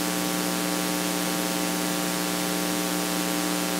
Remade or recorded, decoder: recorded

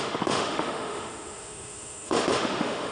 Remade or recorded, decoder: remade, autoencoder, DAC-VAE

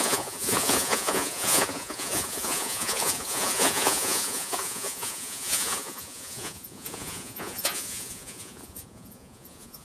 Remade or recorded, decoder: remade, vocoder, Vocos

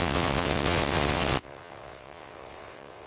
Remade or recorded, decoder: remade, vocoder, WaveNeXt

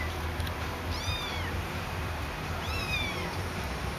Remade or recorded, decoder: remade, vocoder, BigVGAN v2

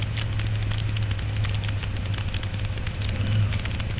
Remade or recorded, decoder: recorded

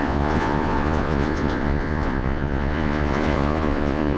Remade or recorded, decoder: remade, vocoder, Vocos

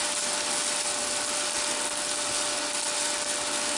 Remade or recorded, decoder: recorded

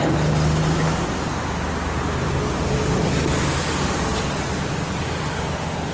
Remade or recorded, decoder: recorded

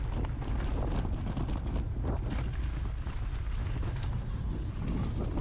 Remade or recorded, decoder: recorded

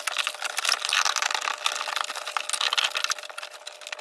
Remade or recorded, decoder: recorded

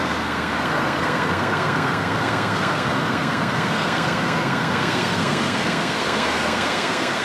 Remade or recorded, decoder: remade, codec, SNAC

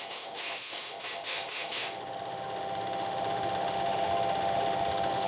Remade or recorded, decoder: remade, autoencoder, DAC-VAE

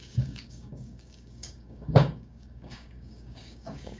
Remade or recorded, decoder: remade, codec, DAC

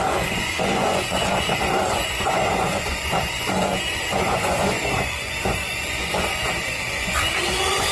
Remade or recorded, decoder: remade, vocoder, Vocos